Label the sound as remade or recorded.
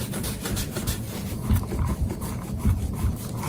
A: recorded